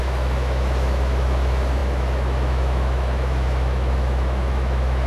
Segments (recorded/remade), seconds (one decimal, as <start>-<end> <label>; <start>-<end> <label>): 0.0-5.1 remade